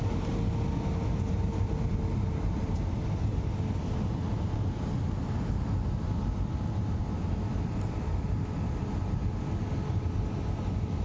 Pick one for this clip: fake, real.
real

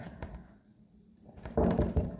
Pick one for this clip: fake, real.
fake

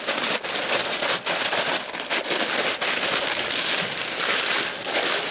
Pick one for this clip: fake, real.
real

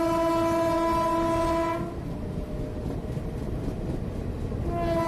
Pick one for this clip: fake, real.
real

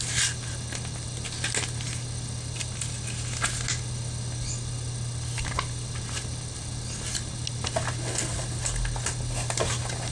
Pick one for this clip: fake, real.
real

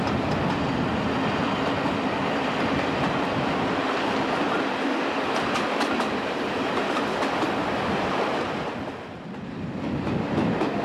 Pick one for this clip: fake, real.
real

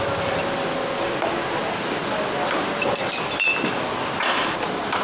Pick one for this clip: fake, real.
real